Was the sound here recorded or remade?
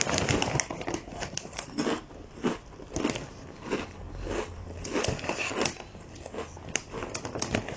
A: recorded